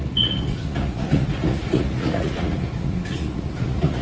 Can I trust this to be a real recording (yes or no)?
no